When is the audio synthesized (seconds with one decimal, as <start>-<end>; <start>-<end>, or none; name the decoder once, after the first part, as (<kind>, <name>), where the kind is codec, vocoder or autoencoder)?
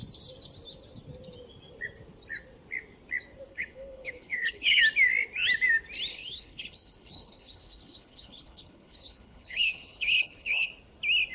3.5-4.8 (codec, HILCodec); 6.1-10.7